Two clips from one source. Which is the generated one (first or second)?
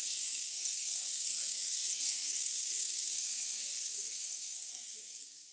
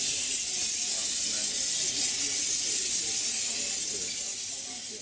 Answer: first